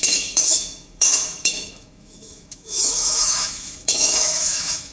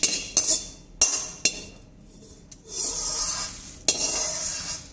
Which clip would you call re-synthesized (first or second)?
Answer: first